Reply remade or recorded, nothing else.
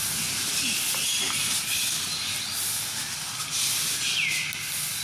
recorded